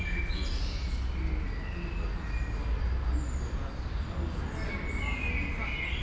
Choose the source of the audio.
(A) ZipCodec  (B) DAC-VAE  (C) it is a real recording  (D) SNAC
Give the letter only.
C